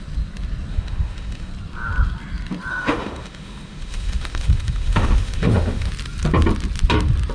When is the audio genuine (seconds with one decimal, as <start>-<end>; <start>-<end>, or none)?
0.0-0.7; 1.5-2.7; 5.9-7.3